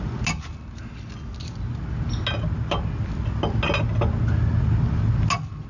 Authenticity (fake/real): real